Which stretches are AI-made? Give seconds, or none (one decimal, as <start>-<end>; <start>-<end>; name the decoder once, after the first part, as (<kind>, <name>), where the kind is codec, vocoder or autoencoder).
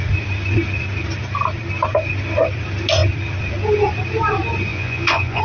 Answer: 4.7-5.4 (vocoder, Vocos)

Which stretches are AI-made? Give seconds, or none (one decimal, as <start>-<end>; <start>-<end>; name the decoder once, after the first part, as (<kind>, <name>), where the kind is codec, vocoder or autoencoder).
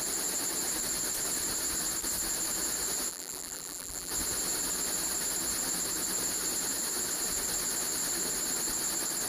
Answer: 3.1-4.1 (vocoder, BigVGAN v2)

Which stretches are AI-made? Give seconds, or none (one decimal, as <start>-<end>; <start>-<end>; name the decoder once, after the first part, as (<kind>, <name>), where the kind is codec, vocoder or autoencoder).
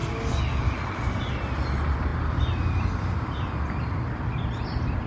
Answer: none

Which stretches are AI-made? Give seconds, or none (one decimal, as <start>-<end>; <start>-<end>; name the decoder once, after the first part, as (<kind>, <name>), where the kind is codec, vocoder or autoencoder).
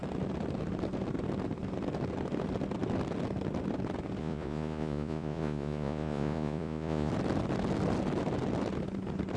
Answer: 4.2-7.1 (vocoder, Vocos)